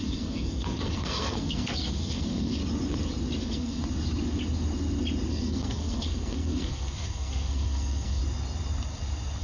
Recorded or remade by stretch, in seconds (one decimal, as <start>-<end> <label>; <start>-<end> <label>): 0.0-2.6 remade; 2.6-3.4 recorded; 3.4-3.8 remade; 3.8-5.3 recorded; 5.3-8.2 remade; 8.2-9.4 recorded